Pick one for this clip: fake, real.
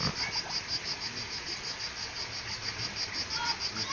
real